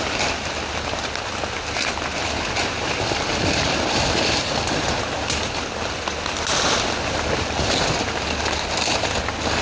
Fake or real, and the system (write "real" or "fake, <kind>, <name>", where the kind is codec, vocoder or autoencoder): real